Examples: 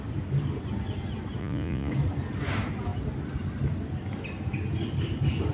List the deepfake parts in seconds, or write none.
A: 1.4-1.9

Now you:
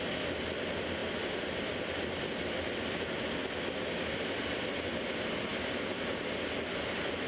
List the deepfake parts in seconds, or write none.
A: none

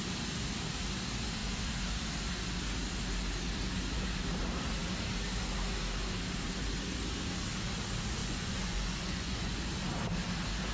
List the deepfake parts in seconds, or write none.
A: 8.2-9.6